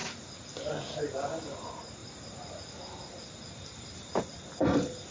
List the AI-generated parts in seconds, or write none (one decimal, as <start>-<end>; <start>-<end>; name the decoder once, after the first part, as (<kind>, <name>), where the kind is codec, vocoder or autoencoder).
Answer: 2.0-4.2 (vocoder, BigVGAN v2)